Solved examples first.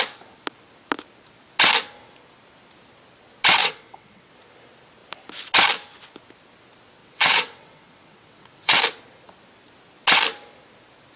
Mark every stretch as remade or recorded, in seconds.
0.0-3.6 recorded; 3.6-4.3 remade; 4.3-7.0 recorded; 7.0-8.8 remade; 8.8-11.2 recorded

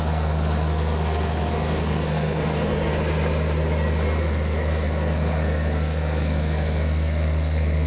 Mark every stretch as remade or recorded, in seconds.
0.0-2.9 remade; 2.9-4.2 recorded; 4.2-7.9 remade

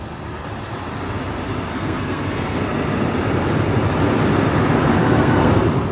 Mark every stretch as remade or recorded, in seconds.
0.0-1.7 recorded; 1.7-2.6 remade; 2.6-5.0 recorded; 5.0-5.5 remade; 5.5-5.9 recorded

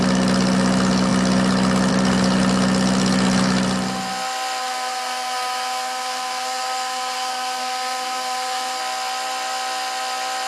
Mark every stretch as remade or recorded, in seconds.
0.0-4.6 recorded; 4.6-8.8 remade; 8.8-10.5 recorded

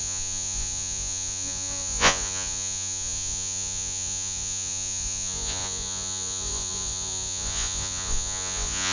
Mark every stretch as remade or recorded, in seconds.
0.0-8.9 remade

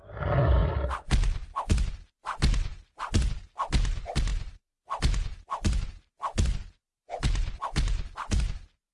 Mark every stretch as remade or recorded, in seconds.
0.0-8.9 recorded